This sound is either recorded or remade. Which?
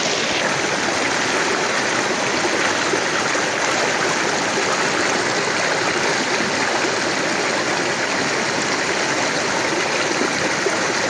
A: recorded